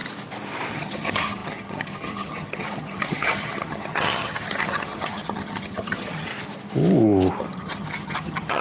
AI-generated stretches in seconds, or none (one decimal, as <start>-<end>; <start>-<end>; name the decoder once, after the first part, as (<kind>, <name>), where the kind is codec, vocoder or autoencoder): 0.7-6.3 (vocoder, HiFi-GAN); 7.4-8.6